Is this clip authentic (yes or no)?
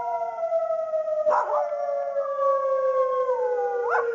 yes